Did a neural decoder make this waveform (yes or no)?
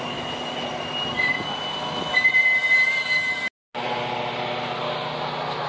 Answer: no